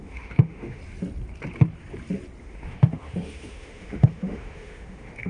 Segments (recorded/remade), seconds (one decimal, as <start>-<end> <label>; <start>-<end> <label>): 0.0-0.8 remade; 0.8-2.4 recorded; 2.4-5.3 remade